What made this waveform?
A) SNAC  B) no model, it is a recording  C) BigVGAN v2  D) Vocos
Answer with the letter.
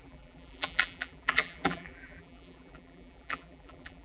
C